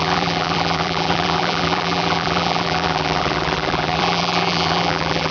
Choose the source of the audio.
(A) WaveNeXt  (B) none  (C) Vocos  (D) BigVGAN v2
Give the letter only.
D